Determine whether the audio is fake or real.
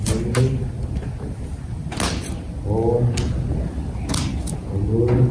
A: real